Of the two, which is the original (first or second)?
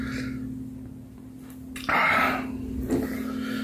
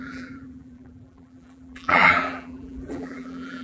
first